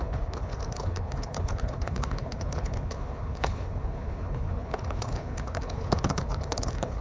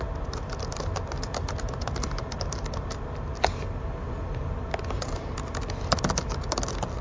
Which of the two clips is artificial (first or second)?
first